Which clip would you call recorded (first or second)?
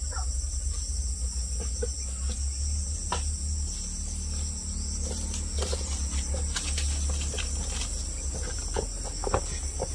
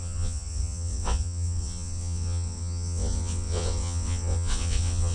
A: first